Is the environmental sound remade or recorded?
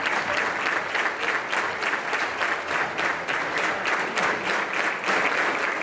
recorded